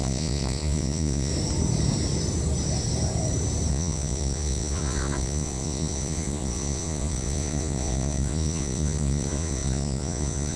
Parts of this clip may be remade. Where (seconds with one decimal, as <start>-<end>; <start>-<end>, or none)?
0.0-1.3; 3.7-10.6

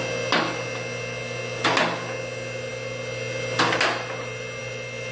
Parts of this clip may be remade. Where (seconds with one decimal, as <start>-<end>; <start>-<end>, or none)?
none

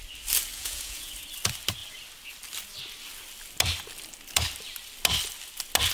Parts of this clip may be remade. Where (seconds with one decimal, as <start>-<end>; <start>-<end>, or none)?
0.5-1.1

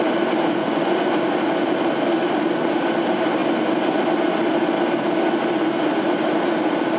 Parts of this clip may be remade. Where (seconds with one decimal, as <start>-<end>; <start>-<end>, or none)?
0.6-1.2

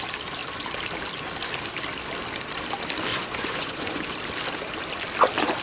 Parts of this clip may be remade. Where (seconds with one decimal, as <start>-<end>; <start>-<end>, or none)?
3.1-4.0